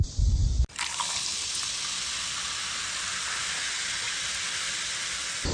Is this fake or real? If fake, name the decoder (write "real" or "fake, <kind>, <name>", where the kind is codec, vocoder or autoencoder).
real